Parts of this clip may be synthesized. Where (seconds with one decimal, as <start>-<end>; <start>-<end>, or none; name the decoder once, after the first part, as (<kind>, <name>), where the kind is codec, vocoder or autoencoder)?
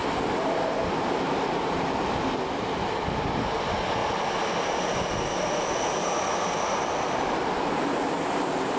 none